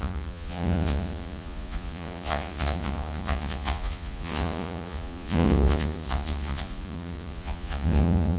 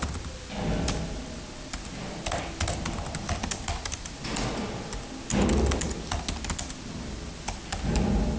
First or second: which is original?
second